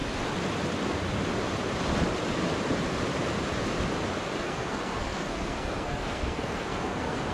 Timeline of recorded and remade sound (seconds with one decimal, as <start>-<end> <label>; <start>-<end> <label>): 0.0-4.4 recorded; 4.4-7.3 remade